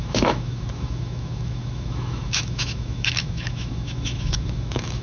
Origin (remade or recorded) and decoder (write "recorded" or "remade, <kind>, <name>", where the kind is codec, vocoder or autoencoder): remade, autoencoder, DAC-VAE